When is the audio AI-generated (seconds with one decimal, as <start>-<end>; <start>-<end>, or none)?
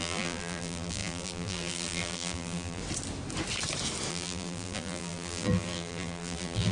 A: 0.0-2.8; 4.1-6.7